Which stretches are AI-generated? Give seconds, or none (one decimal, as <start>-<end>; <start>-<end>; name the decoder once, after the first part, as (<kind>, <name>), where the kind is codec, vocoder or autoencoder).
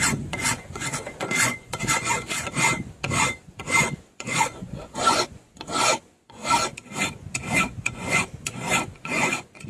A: 0.0-6.4 (vocoder, Vocos); 6.9-9.7